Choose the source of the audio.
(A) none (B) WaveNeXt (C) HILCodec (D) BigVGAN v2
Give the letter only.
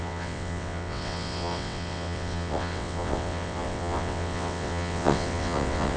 B